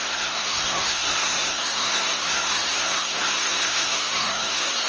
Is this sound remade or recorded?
remade